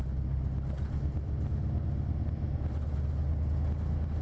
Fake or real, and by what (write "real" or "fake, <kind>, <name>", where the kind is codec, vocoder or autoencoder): real